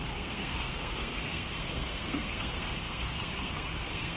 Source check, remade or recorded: remade